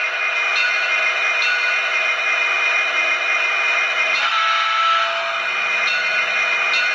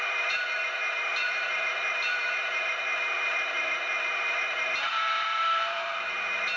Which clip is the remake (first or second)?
second